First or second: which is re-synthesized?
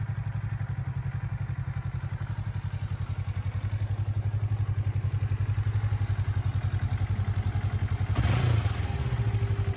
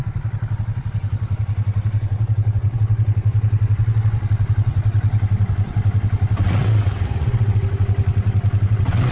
second